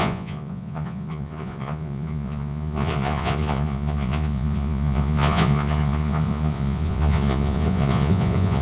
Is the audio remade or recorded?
remade